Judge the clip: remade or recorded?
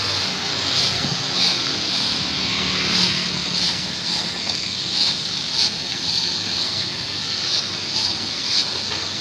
remade